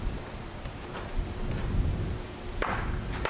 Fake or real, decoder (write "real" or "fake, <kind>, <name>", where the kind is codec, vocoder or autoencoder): fake, vocoder, BigVGAN v2